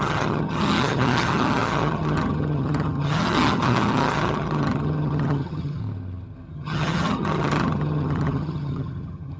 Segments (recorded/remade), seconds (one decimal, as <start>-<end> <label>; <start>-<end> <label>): 0.0-5.8 remade; 5.8-6.5 recorded; 6.5-9.4 remade